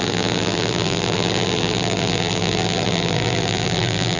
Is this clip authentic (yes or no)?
no